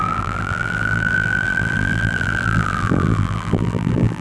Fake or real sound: fake